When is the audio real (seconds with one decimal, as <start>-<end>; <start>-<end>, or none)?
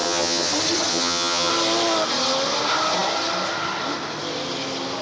0.5-0.9; 1.5-5.0